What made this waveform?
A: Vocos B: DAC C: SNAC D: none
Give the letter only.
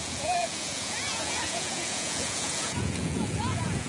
A